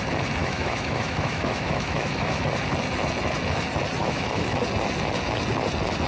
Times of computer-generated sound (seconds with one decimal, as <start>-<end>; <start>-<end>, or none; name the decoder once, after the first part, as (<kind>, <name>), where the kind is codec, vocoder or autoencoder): 0.4-2.4 (autoencoder, DAC-VAE); 4.0-4.6

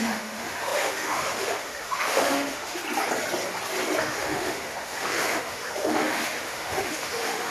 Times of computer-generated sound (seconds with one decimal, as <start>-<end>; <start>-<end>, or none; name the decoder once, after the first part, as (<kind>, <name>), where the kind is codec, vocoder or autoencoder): 0.0-2.8 (autoencoder, DAC-VAE); 4.0-7.5